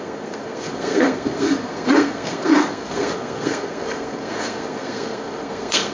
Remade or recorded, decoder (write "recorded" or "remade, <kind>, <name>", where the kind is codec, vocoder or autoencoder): remade, codec, SNAC